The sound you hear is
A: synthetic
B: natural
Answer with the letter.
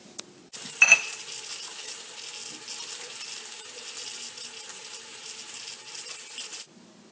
B